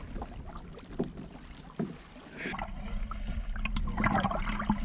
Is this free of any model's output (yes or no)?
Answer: yes